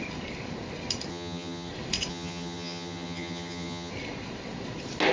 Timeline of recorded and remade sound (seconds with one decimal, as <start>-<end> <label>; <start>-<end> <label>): 0.0-1.1 recorded; 1.1-1.7 remade; 1.7-2.1 recorded; 2.1-3.9 remade; 3.9-5.1 recorded